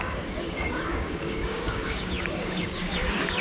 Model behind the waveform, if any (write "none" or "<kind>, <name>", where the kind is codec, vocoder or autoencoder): codec, DAC